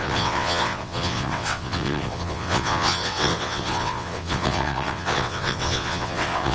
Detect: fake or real fake